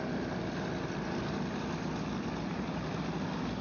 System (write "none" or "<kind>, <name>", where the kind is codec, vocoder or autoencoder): none